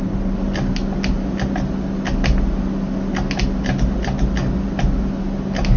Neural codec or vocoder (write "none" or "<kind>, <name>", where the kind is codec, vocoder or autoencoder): none